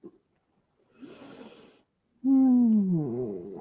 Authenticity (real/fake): real